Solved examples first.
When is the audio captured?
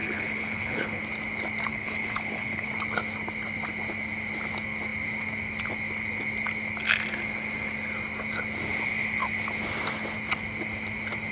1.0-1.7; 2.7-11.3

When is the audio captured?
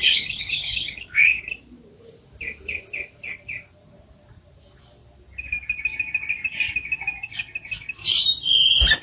1.3-9.0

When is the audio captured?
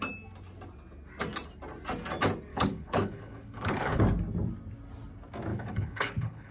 0.0-2.5; 4.0-5.5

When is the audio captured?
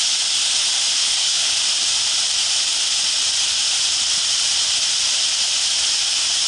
0.0-1.0; 1.5-6.5